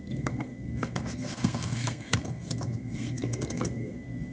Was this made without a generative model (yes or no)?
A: no